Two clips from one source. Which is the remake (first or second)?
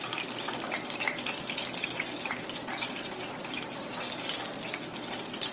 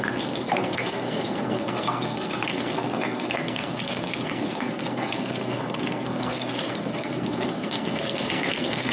second